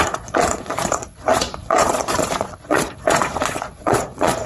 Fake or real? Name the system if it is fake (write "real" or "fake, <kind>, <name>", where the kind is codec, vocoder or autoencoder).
fake, vocoder, Vocos